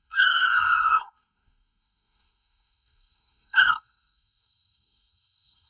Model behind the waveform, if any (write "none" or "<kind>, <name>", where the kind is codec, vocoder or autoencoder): codec, SNAC